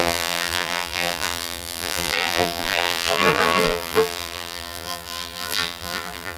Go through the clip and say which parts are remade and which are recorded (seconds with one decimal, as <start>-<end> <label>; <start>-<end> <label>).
0.0-6.4 remade